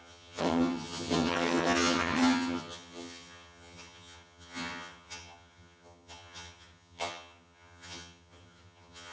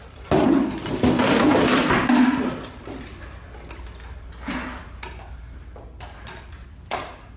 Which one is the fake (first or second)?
first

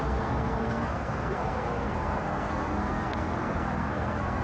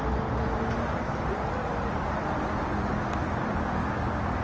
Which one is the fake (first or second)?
first